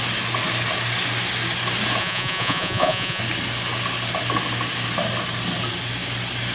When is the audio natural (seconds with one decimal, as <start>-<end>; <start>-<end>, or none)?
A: 0.0-2.0; 3.2-6.5